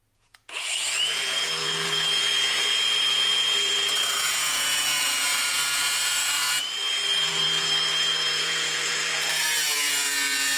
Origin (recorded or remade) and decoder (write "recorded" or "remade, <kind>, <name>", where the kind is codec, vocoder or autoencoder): remade, vocoder, Vocos